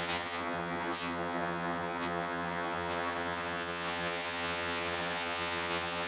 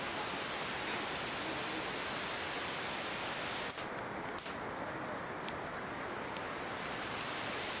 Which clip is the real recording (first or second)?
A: second